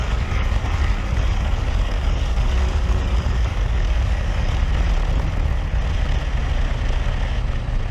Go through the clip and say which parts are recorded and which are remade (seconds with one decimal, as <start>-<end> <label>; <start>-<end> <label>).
0.0-4.7 remade; 4.7-7.9 recorded